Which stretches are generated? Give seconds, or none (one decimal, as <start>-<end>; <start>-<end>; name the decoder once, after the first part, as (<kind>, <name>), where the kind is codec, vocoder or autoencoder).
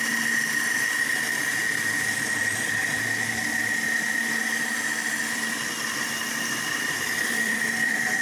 0.0-8.2 (vocoder, BigVGAN v2)